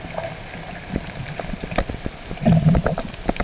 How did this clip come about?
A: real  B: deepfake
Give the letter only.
A